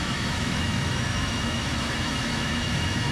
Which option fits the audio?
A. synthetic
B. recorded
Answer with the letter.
A